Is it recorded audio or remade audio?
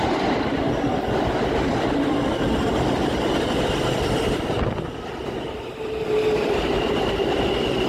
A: recorded